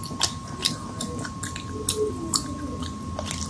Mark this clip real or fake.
real